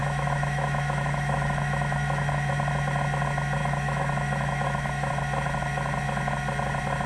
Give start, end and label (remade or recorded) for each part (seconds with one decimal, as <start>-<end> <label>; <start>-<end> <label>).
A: 0.0-2.5 remade; 2.5-3.6 recorded; 3.6-5.1 remade; 5.1-7.1 recorded